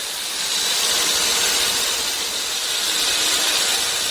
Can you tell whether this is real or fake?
real